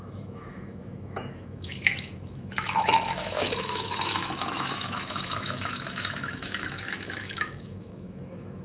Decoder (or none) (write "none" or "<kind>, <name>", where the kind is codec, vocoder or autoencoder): autoencoder, DAC-VAE